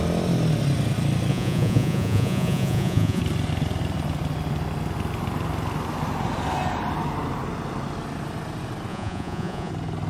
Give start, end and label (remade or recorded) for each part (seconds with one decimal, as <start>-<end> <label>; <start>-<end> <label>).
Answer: 0.0-1.3 recorded; 1.3-3.2 remade; 3.2-8.9 recorded; 8.9-9.7 remade; 9.7-10.1 recorded